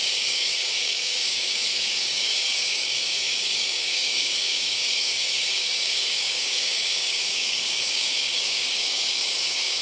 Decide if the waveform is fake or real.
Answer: fake